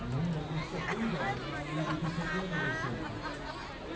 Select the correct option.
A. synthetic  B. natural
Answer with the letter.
B